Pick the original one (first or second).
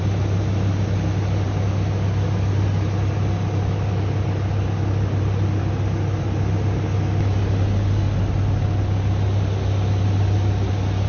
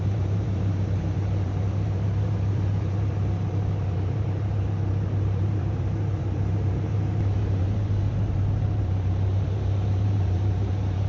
first